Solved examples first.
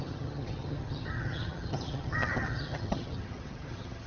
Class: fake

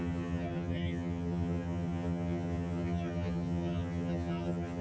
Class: fake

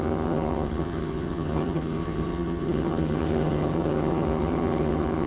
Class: fake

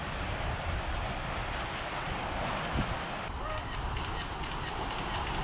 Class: real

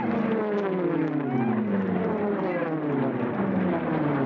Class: real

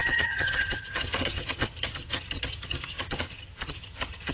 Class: fake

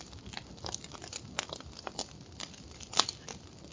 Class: real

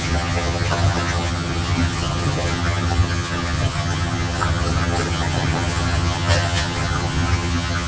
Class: fake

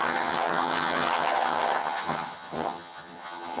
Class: fake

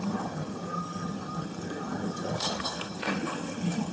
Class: fake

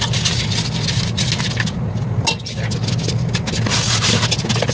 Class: real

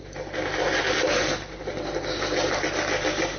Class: real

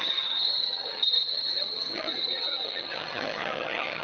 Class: fake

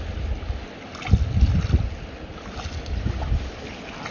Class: real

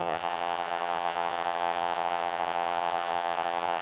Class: fake